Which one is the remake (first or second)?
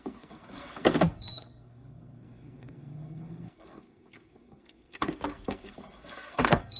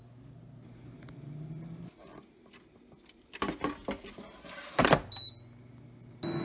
first